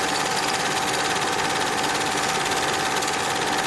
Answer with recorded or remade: recorded